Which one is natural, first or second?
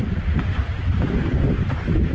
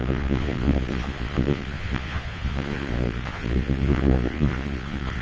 first